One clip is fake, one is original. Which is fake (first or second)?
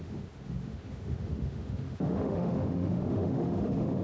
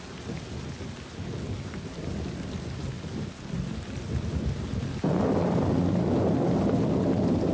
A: first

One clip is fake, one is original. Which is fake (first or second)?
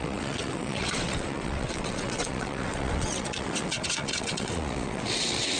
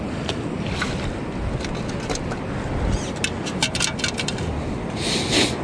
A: first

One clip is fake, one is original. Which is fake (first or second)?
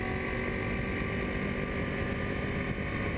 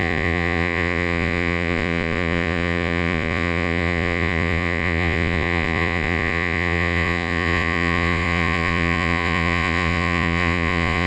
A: second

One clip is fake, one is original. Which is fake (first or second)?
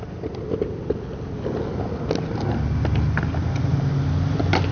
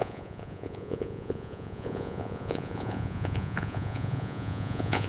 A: second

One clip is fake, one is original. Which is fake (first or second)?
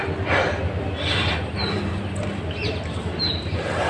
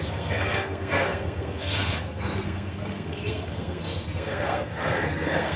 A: second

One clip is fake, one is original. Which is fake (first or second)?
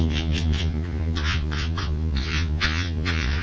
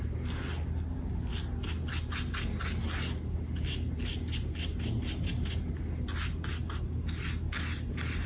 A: first